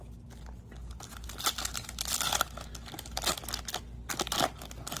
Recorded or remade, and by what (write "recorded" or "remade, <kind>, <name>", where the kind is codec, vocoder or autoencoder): recorded